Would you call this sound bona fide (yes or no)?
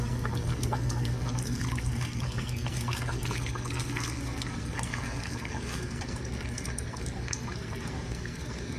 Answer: no